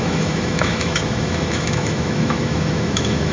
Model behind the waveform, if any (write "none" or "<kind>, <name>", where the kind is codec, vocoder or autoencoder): autoencoder, DAC-VAE